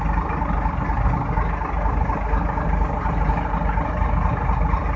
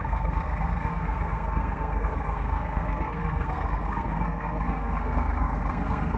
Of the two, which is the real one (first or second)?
first